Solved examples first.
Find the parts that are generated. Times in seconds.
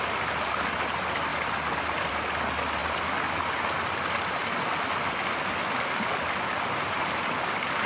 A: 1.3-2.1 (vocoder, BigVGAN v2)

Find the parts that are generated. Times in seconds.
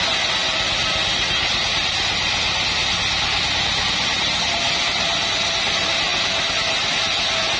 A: none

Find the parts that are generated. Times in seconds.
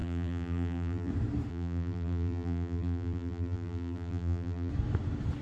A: 0.0-1.1 (vocoder, BigVGAN v2); 1.5-4.7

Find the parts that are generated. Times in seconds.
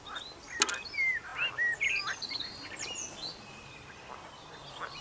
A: none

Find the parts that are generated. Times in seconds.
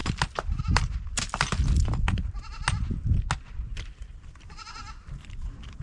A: 0.6-2.6 (vocoder, BigVGAN v2); 4.1-4.8